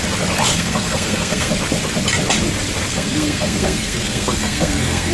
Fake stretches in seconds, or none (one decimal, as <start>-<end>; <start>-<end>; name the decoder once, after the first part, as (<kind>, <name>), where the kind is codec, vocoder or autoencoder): 0.5-1.5 (codec, SNAC); 2.9-5.1